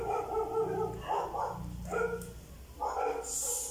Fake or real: real